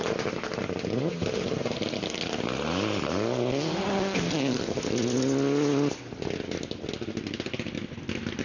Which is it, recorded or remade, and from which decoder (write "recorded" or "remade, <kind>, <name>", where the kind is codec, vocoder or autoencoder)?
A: recorded